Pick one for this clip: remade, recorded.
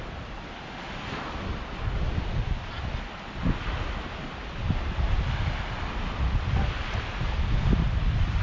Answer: recorded